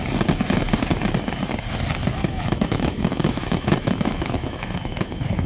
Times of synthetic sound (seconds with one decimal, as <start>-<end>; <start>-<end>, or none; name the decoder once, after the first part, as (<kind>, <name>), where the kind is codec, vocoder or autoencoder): 2.1-5.5 (autoencoder, DAC-VAE)